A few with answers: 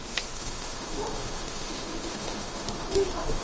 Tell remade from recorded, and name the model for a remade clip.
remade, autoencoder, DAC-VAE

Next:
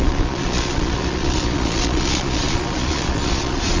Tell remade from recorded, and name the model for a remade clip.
remade, vocoder, Vocos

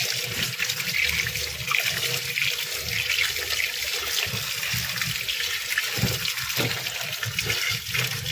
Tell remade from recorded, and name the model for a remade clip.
recorded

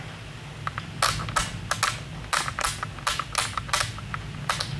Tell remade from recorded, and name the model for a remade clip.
recorded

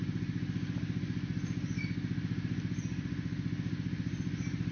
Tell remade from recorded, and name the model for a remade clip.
recorded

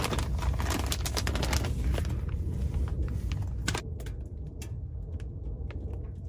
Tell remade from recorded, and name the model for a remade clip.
recorded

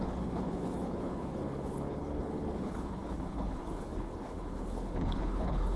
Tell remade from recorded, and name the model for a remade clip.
remade, codec, HILCodec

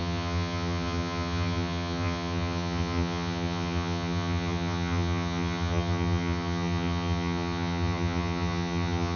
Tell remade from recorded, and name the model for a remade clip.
remade, vocoder, HiFi-GAN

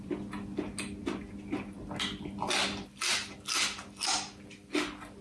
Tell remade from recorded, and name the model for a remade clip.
recorded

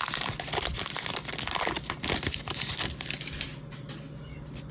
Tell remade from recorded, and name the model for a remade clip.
recorded